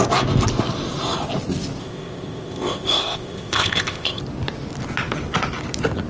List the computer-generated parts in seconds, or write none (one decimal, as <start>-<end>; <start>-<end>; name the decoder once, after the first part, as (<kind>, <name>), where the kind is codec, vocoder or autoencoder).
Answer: 1.8-4.2 (codec, ZipCodec)